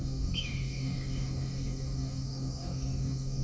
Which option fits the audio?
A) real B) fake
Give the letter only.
B